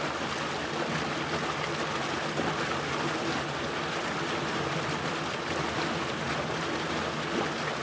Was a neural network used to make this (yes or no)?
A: no